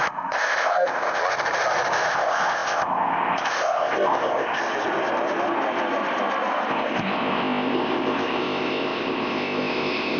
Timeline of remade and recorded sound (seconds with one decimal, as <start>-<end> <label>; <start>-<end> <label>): 0.0-1.2 remade; 1.2-2.1 recorded; 2.1-4.6 remade; 4.6-6.7 recorded; 6.7-10.2 remade